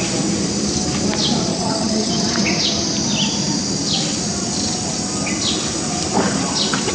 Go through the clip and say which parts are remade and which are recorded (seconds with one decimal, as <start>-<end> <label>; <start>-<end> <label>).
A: 0.0-1.5 recorded; 1.5-2.1 remade; 2.1-6.9 recorded